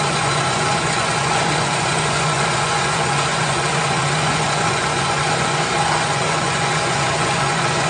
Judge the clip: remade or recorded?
remade